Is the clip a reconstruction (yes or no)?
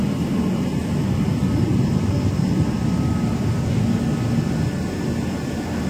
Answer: no